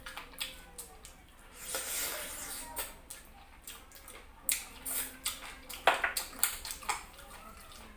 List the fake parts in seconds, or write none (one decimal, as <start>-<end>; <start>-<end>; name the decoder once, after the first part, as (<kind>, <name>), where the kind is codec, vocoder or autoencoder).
1.2-2.4 (vocoder, BigVGAN v2)